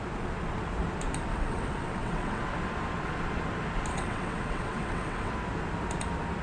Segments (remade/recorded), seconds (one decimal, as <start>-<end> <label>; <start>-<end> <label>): 0.0-1.3 recorded; 1.3-2.4 remade; 2.4-3.9 recorded; 3.9-5.3 remade; 5.3-6.4 recorded